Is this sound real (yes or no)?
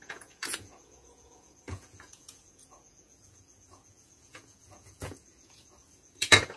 no